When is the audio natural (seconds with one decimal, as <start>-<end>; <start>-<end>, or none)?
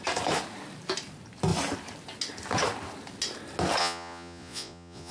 0.0-3.8